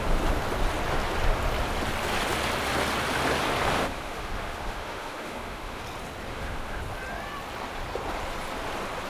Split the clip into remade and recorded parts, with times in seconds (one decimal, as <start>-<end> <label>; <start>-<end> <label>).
0.0-3.8 recorded; 3.8-5.8 remade; 5.8-6.3 recorded; 6.3-6.8 remade; 6.8-9.1 recorded